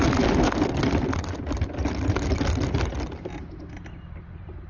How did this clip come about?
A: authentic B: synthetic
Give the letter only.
A